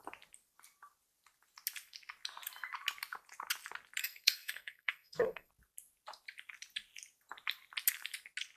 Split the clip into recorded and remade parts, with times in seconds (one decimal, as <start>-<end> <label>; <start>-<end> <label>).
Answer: 0.0-4.0 recorded; 4.0-5.5 remade; 5.5-8.6 recorded